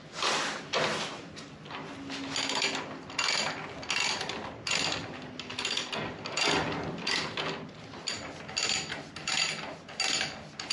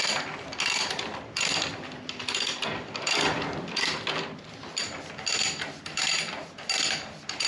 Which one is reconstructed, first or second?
second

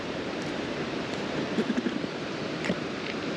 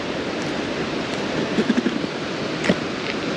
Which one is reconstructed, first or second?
first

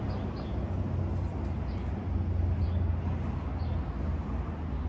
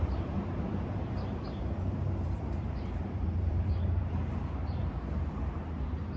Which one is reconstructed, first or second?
second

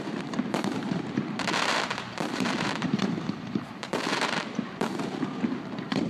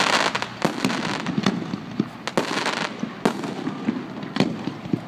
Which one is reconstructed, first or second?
first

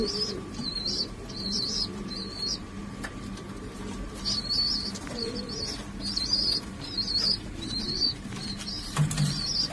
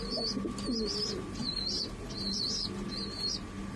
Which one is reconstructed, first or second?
first